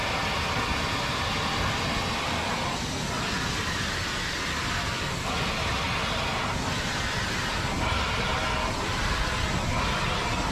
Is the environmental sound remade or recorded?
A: recorded